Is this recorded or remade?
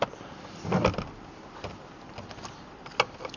recorded